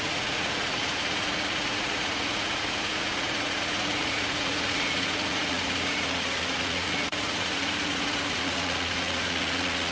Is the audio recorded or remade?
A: remade